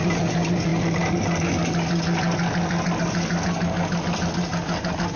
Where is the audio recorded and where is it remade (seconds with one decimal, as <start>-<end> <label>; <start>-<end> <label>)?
0.0-5.2 recorded